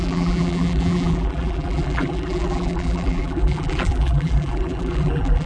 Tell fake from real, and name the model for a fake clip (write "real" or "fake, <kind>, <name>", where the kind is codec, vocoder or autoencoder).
fake, vocoder, BigVGAN v2